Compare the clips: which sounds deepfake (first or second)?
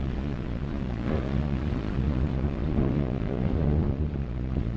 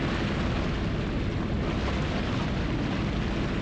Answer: first